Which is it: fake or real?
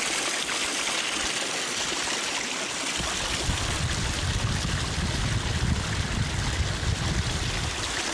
real